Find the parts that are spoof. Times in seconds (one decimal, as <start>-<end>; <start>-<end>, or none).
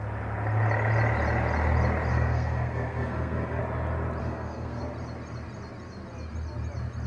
2.1-3.6; 4.2-4.8